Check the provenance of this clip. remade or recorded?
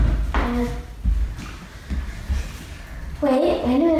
recorded